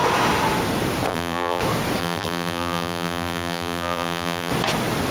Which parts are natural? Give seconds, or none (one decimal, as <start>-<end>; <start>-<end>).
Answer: 0.0-1.1; 1.6-2.0; 4.5-5.1